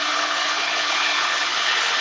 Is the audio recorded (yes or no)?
no